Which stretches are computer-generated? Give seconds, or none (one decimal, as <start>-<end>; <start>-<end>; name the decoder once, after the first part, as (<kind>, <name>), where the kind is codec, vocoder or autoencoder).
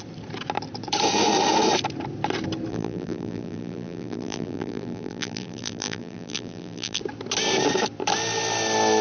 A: 2.7-7.0 (vocoder, BigVGAN v2)